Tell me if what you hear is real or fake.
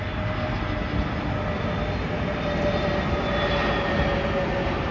real